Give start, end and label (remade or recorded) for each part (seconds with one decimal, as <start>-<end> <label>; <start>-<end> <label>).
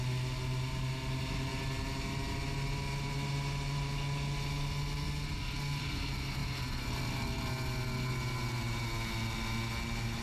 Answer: 0.0-10.2 recorded